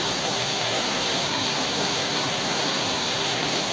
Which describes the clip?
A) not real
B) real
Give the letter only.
A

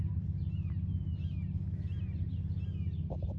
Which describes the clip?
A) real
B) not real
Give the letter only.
A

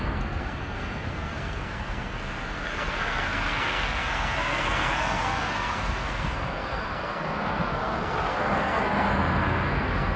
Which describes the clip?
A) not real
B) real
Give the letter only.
A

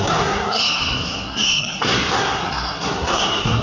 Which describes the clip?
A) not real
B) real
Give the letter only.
A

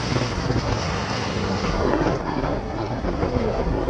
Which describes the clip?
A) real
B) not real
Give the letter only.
B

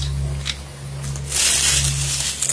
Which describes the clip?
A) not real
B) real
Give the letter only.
B